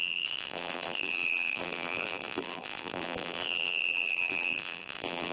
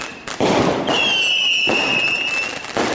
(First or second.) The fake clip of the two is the first